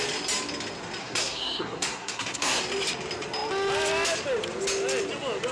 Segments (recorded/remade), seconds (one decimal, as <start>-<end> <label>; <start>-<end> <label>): 0.0-1.0 recorded; 1.0-2.6 remade; 2.6-5.5 recorded